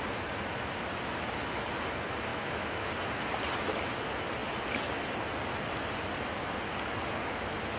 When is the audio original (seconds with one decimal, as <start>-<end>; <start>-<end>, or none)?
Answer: 0.0-2.3; 2.9-7.8

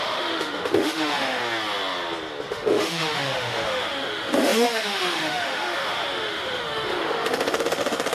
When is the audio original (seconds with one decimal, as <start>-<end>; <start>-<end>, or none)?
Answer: 1.4-2.5

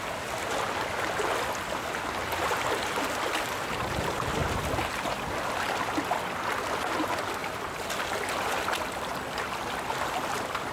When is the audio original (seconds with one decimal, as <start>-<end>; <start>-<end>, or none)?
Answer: 0.0-10.7

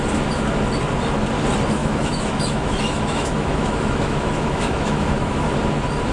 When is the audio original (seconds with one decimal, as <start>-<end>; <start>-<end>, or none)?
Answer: 0.0-1.8; 5.5-6.1

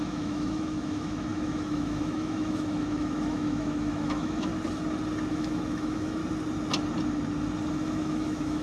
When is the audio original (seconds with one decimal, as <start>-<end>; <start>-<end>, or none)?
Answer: 4.5-5.3; 6.2-7.7

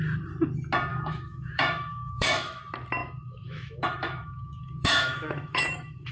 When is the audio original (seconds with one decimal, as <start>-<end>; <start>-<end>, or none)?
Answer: 0.0-0.9; 2.6-3.0

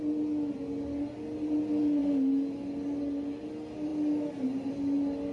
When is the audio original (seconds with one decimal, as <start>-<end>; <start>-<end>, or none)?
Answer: 0.0-5.3

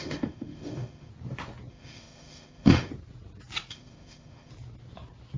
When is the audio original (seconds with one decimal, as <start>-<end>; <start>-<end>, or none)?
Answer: 1.1-1.7; 2.9-3.7; 4.5-5.4